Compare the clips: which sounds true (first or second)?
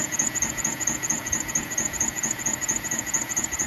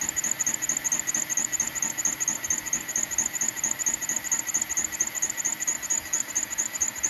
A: second